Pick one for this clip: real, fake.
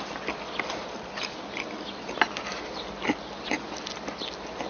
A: real